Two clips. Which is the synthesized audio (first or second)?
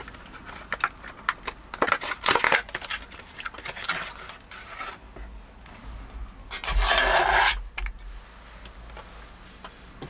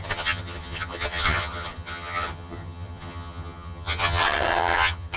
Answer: second